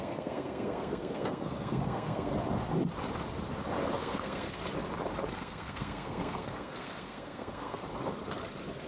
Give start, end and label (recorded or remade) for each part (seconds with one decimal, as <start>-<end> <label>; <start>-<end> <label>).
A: 0.0-2.3 remade; 2.3-4.0 recorded; 4.0-4.6 remade; 4.6-5.3 recorded; 5.3-7.8 remade; 7.8-8.9 recorded